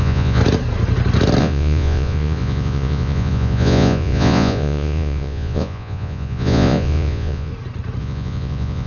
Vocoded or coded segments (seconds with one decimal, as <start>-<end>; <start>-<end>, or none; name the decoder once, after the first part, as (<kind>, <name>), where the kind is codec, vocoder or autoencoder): 0.0-0.4 (vocoder, Vocos); 1.4-7.5; 8.0-8.9